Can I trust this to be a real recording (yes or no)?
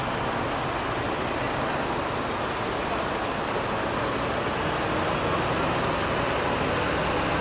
yes